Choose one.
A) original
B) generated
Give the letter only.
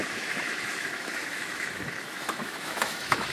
B